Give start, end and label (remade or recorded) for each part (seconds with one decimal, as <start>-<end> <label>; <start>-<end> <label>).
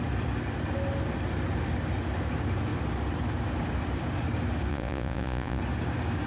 0.0-4.7 recorded; 4.7-5.6 remade; 5.6-6.3 recorded